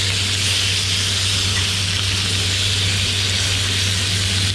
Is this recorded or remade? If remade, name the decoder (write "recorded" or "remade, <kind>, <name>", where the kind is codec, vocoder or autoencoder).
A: recorded